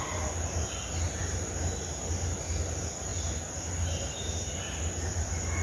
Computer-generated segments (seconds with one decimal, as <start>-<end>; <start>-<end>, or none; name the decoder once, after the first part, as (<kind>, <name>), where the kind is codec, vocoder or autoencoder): none